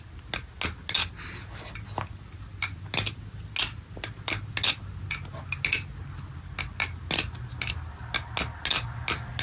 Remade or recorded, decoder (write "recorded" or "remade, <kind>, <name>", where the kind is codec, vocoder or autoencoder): recorded